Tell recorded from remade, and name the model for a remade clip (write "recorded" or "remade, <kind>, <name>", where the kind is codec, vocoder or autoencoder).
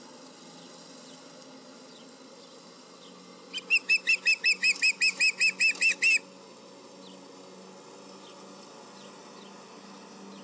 recorded